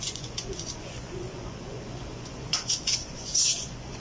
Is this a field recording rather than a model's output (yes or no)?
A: no